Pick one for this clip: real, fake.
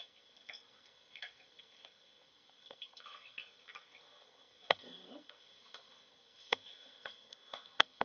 fake